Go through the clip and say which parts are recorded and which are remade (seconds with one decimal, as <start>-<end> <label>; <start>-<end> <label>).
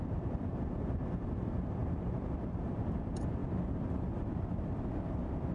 0.0-5.5 remade